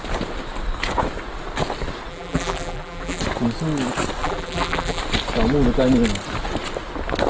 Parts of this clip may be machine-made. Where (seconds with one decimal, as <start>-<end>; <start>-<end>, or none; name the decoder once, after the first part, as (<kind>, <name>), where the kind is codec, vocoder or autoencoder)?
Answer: 2.1-3.2 (vocoder, BigVGAN v2); 4.2-5.0